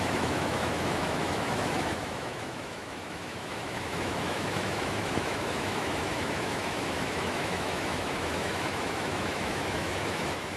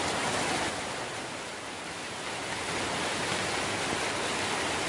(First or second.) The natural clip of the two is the second